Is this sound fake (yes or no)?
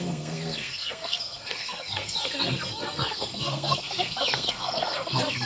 yes